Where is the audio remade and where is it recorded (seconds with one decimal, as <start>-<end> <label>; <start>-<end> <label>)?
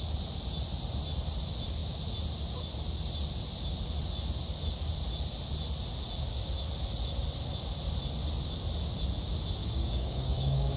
0.0-9.6 recorded; 9.6-10.8 remade